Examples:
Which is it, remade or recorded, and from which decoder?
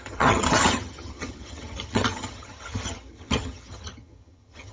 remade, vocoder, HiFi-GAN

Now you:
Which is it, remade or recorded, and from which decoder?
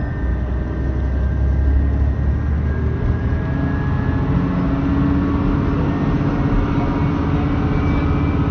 recorded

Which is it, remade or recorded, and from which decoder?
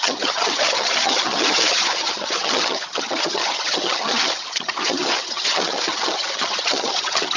remade, vocoder, HiFi-GAN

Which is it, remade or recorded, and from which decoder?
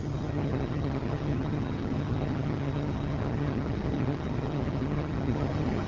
remade, vocoder, HiFi-GAN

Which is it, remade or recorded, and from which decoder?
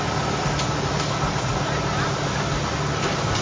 recorded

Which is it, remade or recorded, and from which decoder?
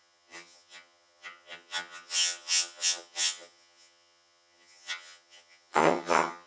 remade, vocoder, HiFi-GAN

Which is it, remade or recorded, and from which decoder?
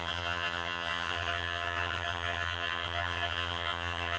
remade, vocoder, HiFi-GAN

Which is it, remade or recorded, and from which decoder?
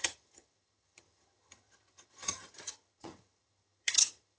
remade, vocoder, HiFi-GAN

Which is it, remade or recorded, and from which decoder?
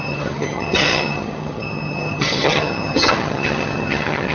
remade, vocoder, HiFi-GAN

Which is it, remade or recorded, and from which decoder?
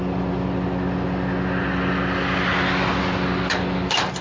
recorded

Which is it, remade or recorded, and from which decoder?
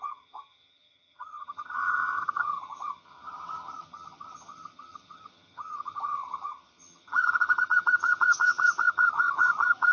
remade, vocoder, HiFi-GAN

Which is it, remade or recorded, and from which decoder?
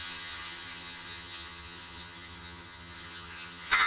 remade, vocoder, HiFi-GAN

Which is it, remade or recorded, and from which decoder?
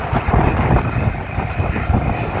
recorded